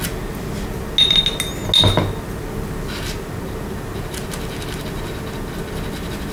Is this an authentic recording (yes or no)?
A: yes